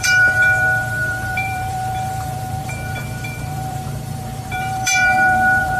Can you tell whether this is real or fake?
fake